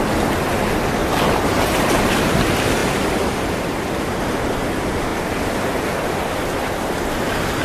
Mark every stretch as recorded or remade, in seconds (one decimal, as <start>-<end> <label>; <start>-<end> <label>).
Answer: 0.0-1.0 recorded; 1.0-2.0 remade; 2.0-7.6 recorded